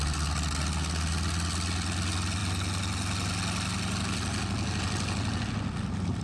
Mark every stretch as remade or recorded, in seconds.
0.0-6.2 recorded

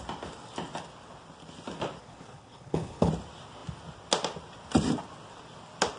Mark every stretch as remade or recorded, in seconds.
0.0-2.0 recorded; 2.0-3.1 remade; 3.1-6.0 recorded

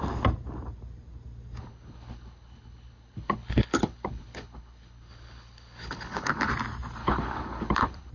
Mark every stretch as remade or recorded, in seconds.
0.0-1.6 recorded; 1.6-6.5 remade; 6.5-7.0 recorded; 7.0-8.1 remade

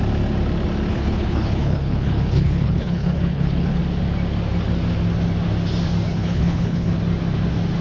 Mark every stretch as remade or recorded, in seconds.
0.0-0.9 recorded; 0.9-3.8 remade; 3.8-6.1 recorded; 6.1-7.0 remade; 7.0-7.8 recorded

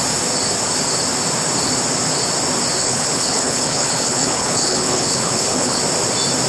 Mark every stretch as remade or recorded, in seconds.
0.0-2.8 recorded; 2.8-5.8 remade; 5.8-6.5 recorded

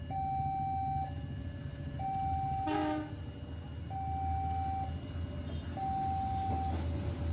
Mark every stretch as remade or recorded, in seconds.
0.0-7.3 recorded

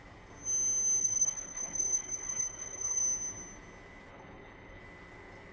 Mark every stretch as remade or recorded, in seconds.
0.0-1.0 recorded; 1.0-3.0 remade; 3.0-4.1 recorded; 4.1-4.8 remade; 4.8-5.5 recorded

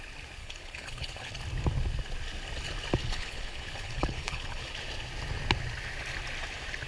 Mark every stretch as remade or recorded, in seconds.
0.0-0.4 recorded; 0.4-1.3 remade; 1.3-3.0 recorded; 3.0-4.7 remade; 4.7-6.9 recorded